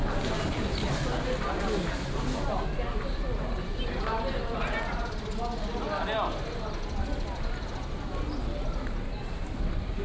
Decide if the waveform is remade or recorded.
recorded